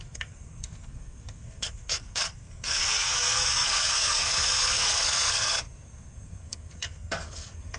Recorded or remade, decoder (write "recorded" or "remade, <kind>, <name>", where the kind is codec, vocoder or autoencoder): remade, codec, SNAC